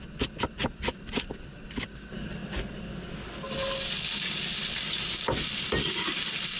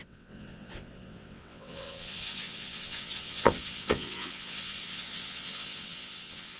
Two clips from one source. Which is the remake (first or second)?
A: second